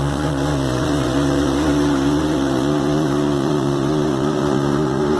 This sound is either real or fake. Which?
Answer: fake